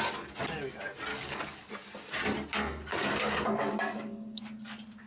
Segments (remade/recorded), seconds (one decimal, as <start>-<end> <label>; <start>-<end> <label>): 0.0-1.1 recorded; 1.1-1.7 remade; 1.7-2.9 recorded; 2.9-4.4 remade; 4.4-5.1 recorded